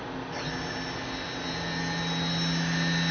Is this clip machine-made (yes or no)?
no